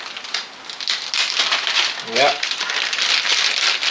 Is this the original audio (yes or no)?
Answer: yes